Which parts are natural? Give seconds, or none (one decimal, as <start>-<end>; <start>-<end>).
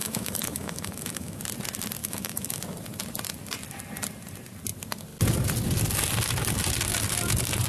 1.4-2.0; 2.6-7.7